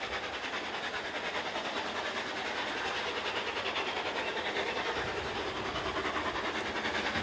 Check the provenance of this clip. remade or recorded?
recorded